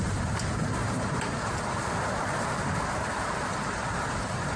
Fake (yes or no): yes